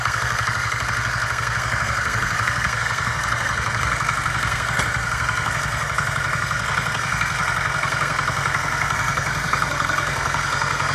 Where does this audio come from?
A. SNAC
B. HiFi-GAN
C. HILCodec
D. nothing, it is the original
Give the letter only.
A